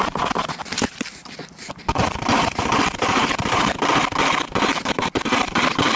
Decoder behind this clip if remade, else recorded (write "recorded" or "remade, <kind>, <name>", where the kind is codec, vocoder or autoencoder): remade, vocoder, BigVGAN v2